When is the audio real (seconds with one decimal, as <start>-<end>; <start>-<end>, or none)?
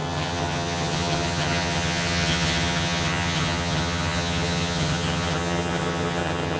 none